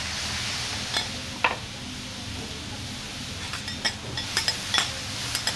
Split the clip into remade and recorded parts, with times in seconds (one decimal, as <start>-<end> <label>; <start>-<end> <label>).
0.0-5.6 recorded